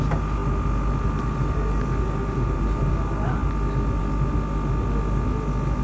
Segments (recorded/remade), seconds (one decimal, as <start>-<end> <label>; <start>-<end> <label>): 0.0-2.2 recorded; 2.2-2.9 remade; 2.9-5.8 recorded